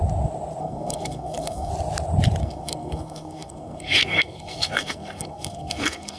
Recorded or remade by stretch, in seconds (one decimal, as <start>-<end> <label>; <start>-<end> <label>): 0.0-0.6 recorded; 0.6-1.7 remade; 1.7-2.4 recorded; 2.4-6.2 remade